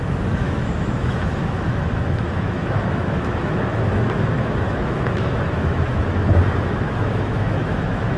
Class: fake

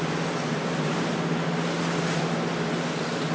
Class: real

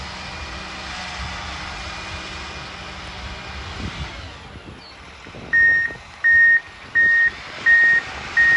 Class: real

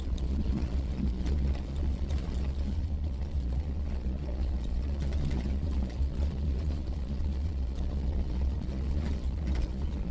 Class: fake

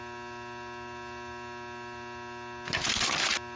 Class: real